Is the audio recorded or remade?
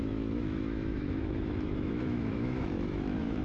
remade